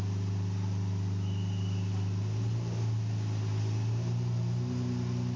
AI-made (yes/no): no